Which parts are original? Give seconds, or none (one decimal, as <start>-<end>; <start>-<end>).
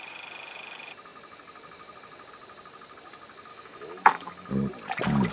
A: 0.0-3.5; 4.5-5.3